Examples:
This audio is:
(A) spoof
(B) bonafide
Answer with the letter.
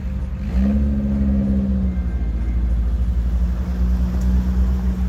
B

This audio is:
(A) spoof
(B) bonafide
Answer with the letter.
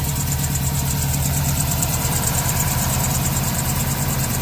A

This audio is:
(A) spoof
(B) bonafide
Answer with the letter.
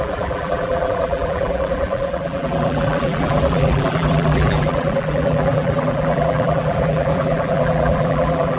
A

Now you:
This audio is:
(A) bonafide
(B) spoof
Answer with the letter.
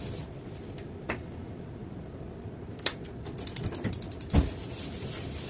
B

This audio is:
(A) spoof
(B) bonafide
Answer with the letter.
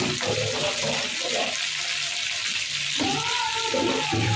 A